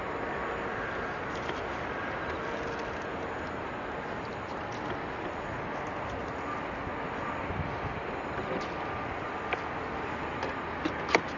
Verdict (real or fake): real